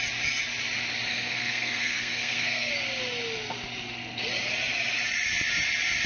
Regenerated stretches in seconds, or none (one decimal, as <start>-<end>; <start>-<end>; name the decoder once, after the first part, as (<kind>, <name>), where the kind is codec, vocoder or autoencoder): 1.1-2.7 (codec, SNAC)